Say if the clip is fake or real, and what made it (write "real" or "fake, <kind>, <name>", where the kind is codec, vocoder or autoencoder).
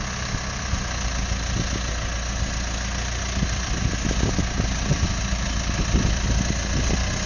real